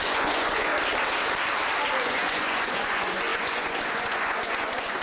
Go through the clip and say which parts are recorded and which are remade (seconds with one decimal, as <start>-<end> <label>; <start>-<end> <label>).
0.0-0.7 remade; 0.7-2.0 recorded; 2.0-5.0 remade